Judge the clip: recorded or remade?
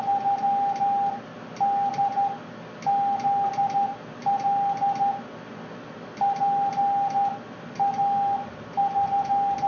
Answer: recorded